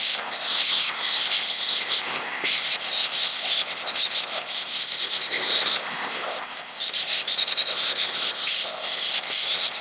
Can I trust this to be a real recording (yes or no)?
no